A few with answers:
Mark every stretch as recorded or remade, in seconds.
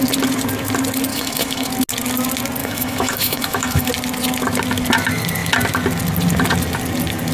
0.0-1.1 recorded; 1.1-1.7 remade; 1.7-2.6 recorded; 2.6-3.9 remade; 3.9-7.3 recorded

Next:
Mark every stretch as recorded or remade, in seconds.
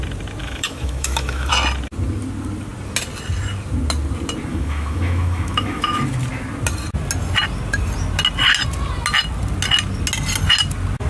0.0-0.4 recorded; 0.4-1.5 remade; 1.5-4.5 recorded; 4.5-6.0 remade; 6.0-11.1 recorded